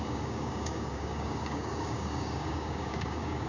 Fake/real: fake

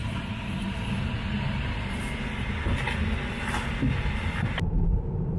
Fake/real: real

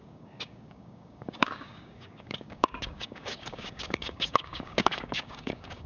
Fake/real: fake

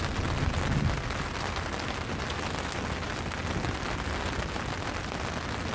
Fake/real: real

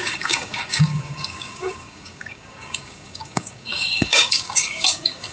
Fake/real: fake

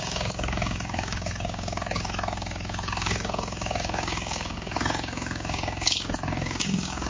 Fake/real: fake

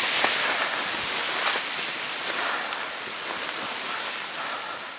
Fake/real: real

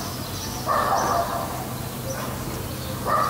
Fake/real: real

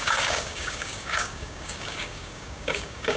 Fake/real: fake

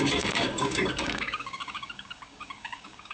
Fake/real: fake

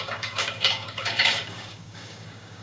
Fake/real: fake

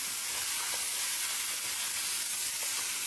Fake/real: real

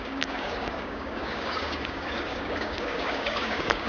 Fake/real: fake